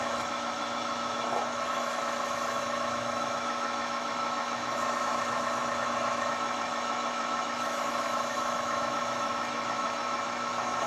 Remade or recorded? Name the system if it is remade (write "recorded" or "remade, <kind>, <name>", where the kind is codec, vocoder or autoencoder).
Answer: remade, autoencoder, DAC-VAE